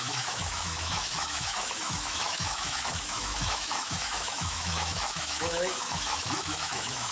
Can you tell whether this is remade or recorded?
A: remade